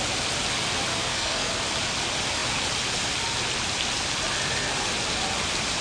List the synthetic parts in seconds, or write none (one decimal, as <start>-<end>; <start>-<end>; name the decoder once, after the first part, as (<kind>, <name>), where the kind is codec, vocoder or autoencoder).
0.9-1.5 (codec, SNAC)